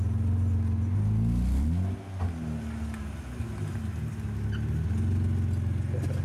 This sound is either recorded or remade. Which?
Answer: recorded